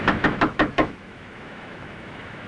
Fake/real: fake